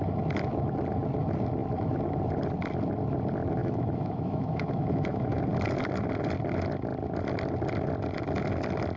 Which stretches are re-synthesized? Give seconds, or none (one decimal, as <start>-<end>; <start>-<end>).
3.6-5.4